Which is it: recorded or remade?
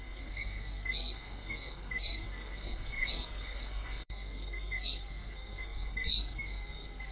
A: remade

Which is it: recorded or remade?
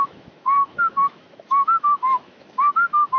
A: remade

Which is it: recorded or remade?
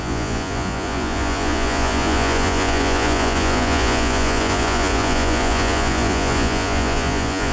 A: remade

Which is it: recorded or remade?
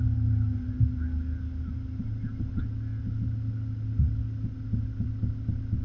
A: recorded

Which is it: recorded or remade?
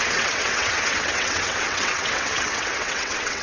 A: remade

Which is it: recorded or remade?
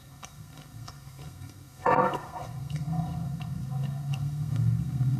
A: remade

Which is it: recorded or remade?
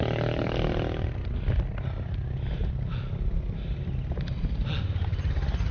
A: recorded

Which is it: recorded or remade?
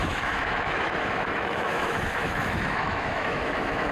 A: remade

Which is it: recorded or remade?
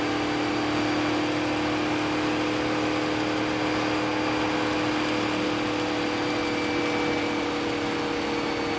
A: recorded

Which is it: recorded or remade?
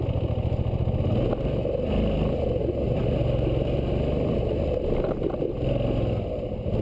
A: recorded